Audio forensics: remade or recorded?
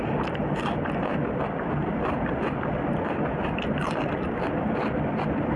recorded